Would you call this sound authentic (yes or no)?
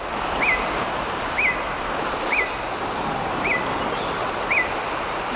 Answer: yes